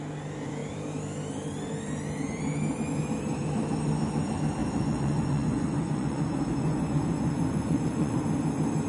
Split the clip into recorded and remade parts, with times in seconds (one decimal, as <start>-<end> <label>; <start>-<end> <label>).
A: 0.0-4.6 recorded; 4.6-8.2 remade; 8.2-8.9 recorded